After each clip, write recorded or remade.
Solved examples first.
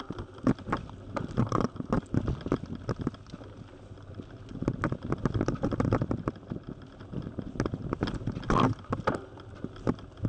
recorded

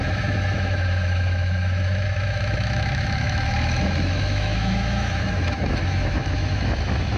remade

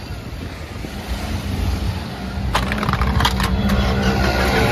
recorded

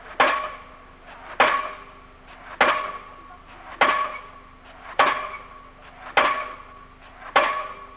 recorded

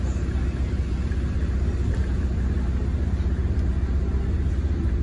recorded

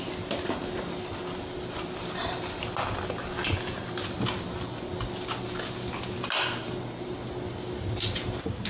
recorded